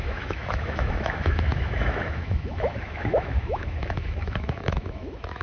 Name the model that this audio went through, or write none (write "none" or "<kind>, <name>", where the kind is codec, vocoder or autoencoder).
autoencoder, DAC-VAE